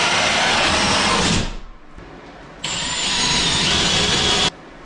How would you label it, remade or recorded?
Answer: recorded